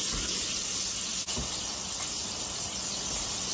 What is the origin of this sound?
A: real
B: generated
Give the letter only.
A